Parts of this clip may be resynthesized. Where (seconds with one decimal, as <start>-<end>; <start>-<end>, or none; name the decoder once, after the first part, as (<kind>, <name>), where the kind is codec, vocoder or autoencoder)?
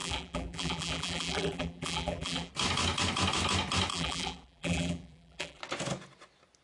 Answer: 0.0-2.5 (vocoder, BigVGAN v2); 3.9-5.6